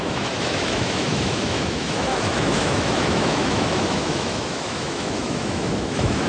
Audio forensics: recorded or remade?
remade